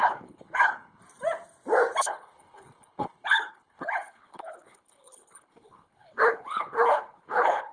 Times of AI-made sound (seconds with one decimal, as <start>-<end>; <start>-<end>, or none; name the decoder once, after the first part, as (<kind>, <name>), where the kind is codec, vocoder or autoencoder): 0.0-1.0 (codec, HILCodec); 2.0-7.7